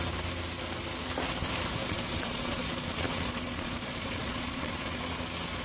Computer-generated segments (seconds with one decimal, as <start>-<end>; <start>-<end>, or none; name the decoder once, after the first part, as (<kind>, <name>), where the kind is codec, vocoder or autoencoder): 1.8-5.0 (vocoder, Vocos)

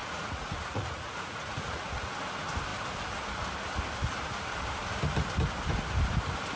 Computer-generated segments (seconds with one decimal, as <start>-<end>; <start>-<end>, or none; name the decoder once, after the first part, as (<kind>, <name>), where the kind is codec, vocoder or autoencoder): 0.0-2.1 (vocoder, Vocos)

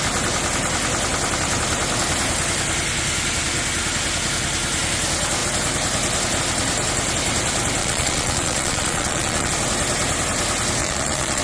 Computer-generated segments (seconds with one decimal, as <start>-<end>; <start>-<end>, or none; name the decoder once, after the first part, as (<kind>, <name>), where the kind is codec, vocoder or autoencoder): 7.8-9.5 (vocoder, Vocos); 10.8-11.4

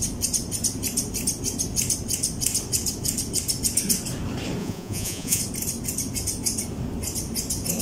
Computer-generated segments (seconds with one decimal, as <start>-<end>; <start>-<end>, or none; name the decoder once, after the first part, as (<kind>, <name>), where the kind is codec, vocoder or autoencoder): 4.6-5.4 (vocoder, Vocos)

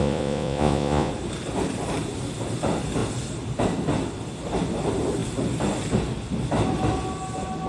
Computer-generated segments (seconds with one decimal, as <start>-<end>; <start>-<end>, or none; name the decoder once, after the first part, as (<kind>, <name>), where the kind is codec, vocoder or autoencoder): 0.0-1.1 (vocoder, Vocos)